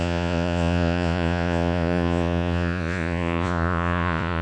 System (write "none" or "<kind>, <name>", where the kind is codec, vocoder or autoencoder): vocoder, Vocos